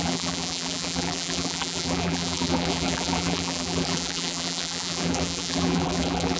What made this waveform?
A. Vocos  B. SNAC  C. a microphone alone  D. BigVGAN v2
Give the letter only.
D